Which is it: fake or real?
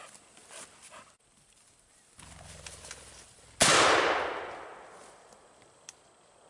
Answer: real